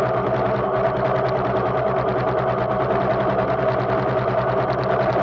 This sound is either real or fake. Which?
real